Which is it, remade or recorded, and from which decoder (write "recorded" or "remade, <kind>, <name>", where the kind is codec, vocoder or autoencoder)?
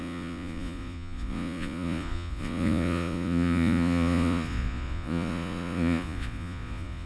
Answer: remade, vocoder, Vocos